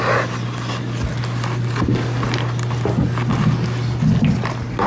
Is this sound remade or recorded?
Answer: recorded